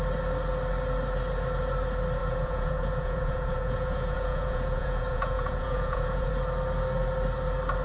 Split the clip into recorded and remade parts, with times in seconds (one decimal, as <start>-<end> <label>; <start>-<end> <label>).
0.0-2.2 recorded; 2.2-6.3 remade; 6.3-7.8 recorded